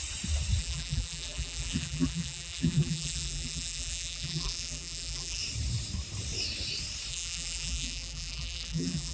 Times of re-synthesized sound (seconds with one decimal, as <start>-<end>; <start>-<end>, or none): 0.6-5.4; 7.1-9.1